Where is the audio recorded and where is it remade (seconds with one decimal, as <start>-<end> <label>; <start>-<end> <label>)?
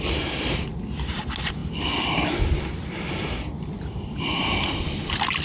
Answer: 0.0-5.4 recorded